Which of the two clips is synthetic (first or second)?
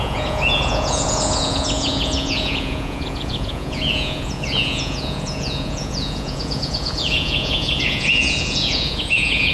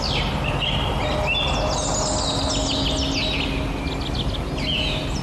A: first